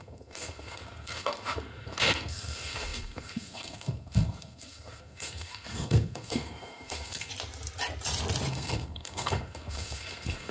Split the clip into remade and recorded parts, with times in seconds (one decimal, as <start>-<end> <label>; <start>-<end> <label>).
0.0-7.3 remade; 7.3-8.5 recorded; 8.5-10.5 remade